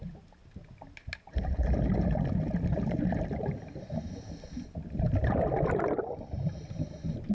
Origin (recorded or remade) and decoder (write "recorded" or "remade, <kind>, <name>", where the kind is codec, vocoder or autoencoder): recorded